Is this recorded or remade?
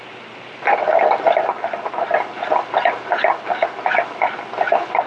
recorded